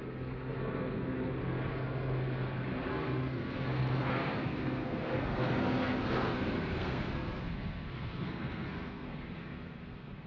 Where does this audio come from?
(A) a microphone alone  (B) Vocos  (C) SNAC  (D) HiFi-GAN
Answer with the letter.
C